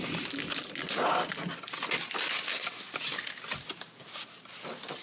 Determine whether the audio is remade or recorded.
recorded